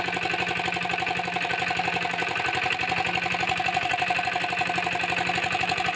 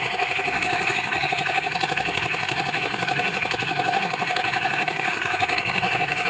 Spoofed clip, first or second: second